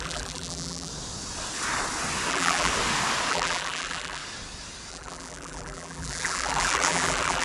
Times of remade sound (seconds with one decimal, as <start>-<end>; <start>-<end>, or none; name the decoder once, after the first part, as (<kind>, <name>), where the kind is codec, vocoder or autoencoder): 0.0-0.9 (vocoder, BigVGAN v2); 2.3-2.7; 3.3-4.2; 4.9-7.4